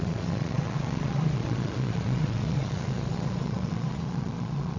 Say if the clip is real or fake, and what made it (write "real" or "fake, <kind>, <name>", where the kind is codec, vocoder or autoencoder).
fake, vocoder, Vocos